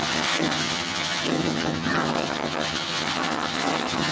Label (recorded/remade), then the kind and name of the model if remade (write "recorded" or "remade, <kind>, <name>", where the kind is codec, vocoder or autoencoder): remade, vocoder, HiFi-GAN